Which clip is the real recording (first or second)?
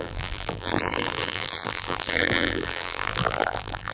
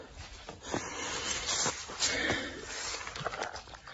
second